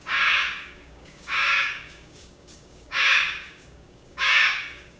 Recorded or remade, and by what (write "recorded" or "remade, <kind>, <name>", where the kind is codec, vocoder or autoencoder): remade, codec, DAC